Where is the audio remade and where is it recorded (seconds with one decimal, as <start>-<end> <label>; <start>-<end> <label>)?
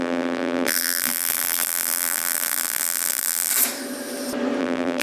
0.0-3.5 remade; 3.5-4.6 recorded; 4.6-5.0 remade